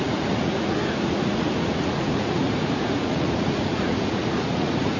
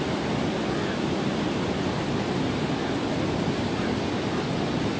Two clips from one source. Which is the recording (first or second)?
second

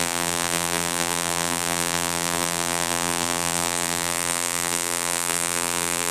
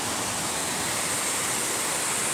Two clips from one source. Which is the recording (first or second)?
second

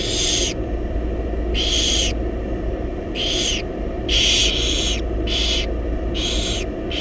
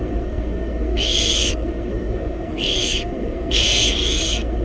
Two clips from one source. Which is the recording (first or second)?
first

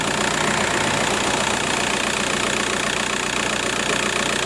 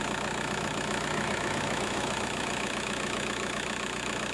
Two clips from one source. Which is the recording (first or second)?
first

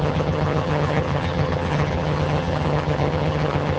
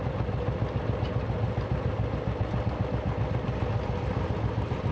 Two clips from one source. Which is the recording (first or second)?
second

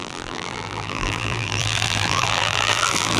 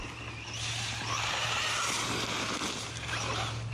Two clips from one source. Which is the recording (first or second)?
second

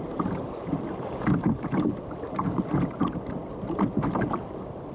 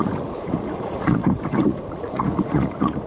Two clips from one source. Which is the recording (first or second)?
first